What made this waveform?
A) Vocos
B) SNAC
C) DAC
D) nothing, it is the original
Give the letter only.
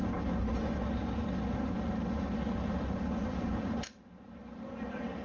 D